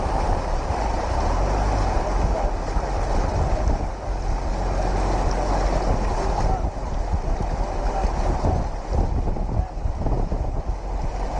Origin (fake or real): real